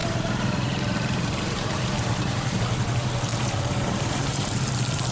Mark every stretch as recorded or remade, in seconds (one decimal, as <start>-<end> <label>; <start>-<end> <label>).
0.0-2.6 remade; 2.6-3.3 recorded; 3.3-4.6 remade; 4.6-5.1 recorded